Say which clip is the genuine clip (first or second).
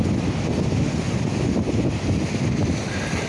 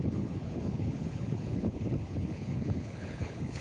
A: first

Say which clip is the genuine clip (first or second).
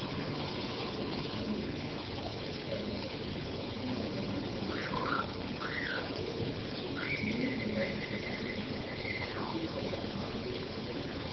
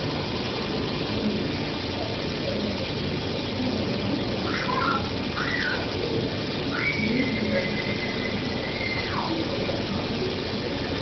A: second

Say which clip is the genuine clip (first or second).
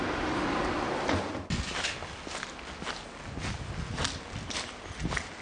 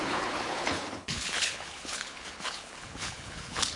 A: first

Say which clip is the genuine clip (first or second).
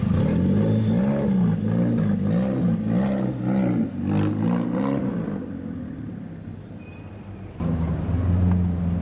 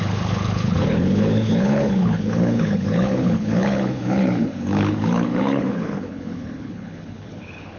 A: first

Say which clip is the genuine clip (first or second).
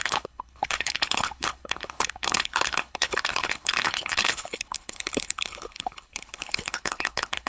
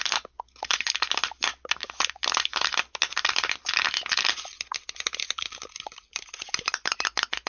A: second